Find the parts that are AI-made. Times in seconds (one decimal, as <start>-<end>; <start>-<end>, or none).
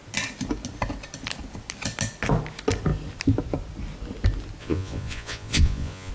4.6-6.1